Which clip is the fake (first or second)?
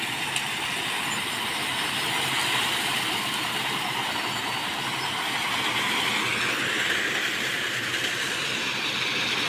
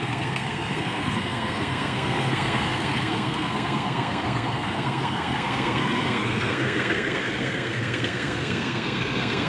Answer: second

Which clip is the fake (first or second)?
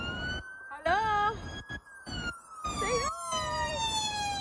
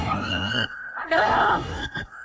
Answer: second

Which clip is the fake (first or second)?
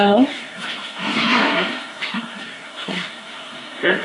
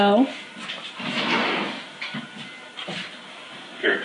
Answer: first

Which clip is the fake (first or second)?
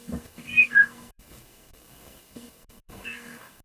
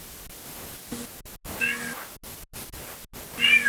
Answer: first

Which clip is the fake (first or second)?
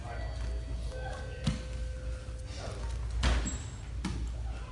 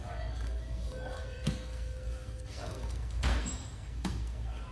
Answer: second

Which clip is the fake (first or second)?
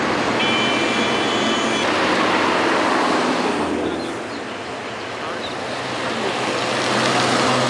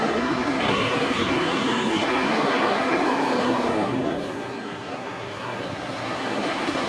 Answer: second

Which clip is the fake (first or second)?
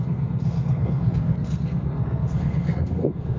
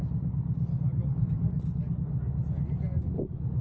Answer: first